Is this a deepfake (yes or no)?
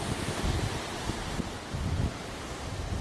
no